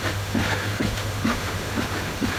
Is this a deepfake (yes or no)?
yes